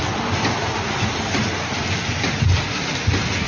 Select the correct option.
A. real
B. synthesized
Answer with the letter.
A